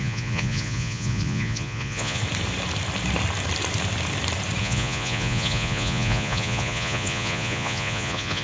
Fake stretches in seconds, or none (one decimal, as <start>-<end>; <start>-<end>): 0.0-2.2; 4.6-8.4